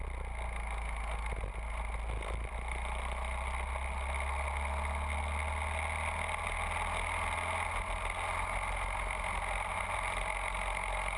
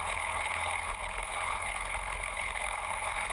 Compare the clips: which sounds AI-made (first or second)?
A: second